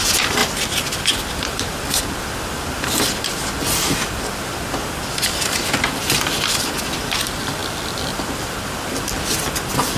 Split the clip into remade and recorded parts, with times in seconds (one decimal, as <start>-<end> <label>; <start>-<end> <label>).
0.0-0.4 remade; 0.4-1.3 recorded; 1.3-10.0 remade